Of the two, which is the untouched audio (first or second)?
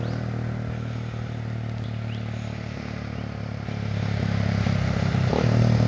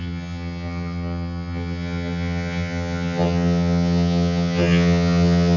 first